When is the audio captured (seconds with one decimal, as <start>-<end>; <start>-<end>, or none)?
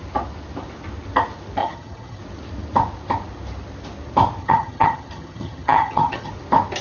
0.0-1.6; 2.2-4.4; 6.3-6.8